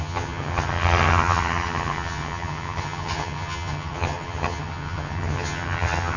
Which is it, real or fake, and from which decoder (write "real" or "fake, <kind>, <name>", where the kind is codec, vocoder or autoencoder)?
fake, vocoder, HiFi-GAN